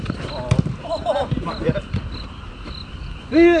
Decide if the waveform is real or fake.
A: real